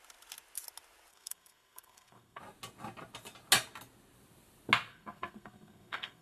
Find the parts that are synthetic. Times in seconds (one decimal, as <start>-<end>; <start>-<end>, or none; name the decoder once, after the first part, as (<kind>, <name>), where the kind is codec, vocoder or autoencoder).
1.1-2.4 (codec, SNAC); 4.9-6.2